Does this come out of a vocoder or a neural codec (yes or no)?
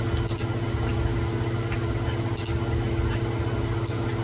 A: no